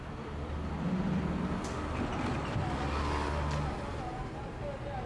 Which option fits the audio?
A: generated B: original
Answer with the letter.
B